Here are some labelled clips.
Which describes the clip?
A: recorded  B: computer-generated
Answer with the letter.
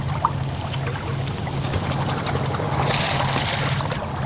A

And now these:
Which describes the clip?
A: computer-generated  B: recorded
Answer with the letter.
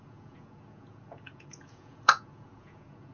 A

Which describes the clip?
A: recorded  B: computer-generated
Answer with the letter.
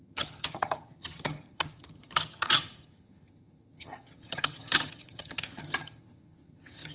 B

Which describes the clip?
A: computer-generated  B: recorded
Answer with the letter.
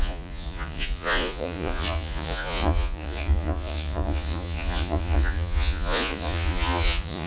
A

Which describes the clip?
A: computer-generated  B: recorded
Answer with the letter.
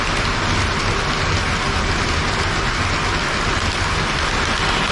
B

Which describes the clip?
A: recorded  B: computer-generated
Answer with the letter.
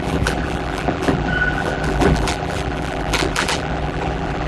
B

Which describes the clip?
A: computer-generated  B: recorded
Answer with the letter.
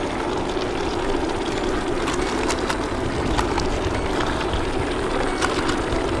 B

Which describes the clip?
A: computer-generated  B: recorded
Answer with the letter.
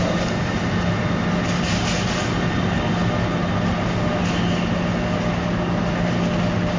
B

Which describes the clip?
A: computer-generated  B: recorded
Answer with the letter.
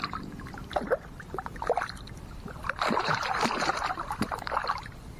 A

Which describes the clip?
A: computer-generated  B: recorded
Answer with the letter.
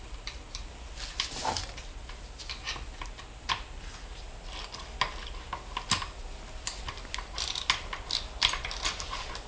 B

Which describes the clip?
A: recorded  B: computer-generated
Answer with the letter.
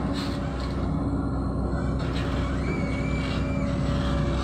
A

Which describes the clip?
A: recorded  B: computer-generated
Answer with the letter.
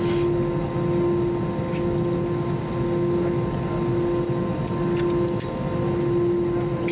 A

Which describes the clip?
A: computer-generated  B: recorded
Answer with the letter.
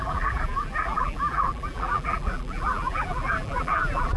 A